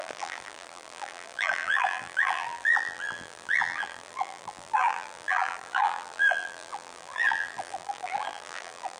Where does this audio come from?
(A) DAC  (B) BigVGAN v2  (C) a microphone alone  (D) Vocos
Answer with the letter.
B